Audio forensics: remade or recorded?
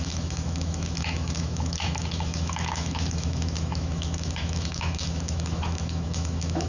remade